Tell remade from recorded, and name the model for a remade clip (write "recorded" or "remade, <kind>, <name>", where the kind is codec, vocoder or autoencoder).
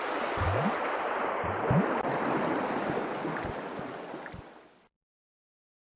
recorded